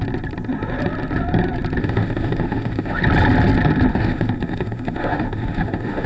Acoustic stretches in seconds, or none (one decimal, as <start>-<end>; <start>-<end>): 0.0-1.8; 3.0-3.9